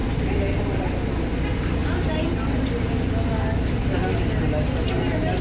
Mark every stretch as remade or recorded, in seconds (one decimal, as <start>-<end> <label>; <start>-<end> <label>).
0.0-5.4 recorded